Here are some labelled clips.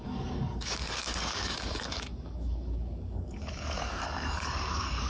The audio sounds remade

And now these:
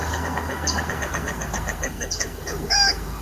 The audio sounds remade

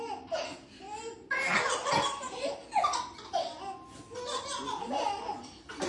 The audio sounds recorded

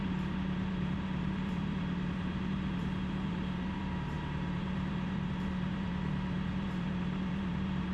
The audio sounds remade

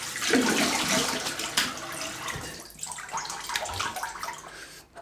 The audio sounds recorded